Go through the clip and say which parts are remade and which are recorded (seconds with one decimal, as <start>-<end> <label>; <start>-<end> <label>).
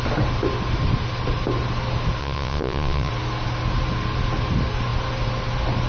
0.0-2.2 recorded; 2.2-3.1 remade; 3.1-5.9 recorded